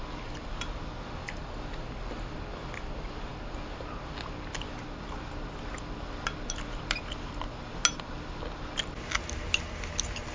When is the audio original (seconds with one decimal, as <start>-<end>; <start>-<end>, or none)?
0.0-10.3